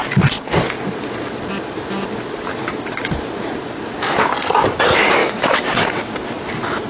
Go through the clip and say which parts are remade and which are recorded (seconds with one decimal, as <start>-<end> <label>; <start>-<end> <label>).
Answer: 0.0-5.2 recorded; 5.2-6.0 remade; 6.0-6.9 recorded